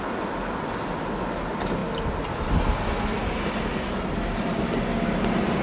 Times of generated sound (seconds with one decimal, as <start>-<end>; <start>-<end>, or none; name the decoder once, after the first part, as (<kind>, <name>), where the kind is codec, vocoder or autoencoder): none